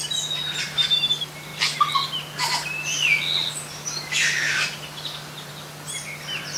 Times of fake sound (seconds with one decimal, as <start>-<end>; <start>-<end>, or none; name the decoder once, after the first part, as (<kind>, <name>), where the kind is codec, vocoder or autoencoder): none